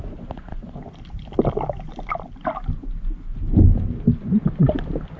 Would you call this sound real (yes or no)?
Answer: yes